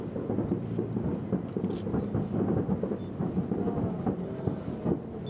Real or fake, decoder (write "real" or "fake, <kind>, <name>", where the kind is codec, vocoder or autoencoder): real